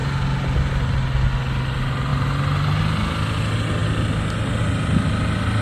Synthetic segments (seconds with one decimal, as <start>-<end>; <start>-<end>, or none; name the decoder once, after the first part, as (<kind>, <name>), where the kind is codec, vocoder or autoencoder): none